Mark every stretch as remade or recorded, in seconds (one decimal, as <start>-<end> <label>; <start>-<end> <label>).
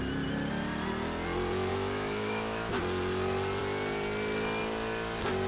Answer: 0.0-1.7 recorded; 1.7-2.8 remade; 2.8-5.5 recorded